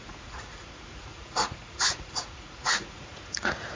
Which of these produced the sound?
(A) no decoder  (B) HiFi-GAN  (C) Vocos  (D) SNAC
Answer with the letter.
C